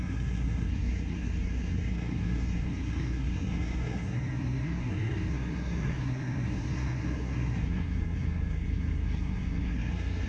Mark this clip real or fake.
fake